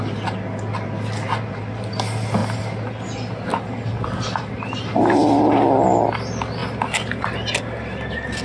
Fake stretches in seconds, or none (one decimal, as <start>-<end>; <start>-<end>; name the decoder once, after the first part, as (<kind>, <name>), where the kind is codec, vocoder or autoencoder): 2.4-4.4 (vocoder, BigVGAN v2)